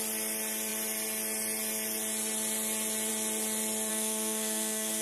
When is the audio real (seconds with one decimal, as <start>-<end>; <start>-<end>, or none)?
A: 0.0-3.9